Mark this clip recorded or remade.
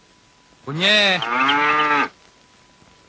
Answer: recorded